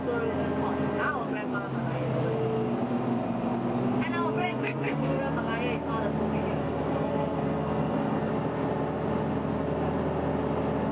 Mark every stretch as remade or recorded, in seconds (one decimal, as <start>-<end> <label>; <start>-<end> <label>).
0.0-4.4 recorded; 4.4-5.2 remade; 5.2-6.6 recorded; 6.6-8.3 remade; 8.3-10.9 recorded